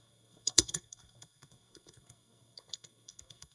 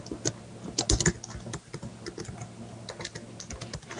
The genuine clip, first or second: second